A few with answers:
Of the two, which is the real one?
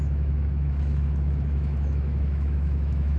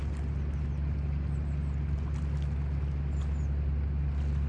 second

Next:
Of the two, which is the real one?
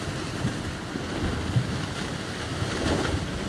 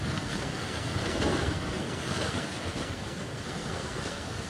first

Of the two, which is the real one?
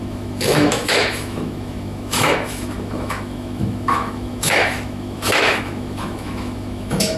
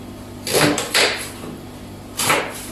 second